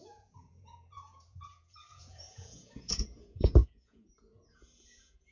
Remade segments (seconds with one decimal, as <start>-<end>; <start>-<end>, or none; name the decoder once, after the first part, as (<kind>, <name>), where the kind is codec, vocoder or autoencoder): 0.0-5.3 (vocoder, Vocos)